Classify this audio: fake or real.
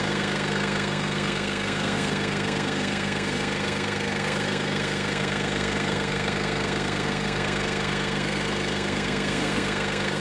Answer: fake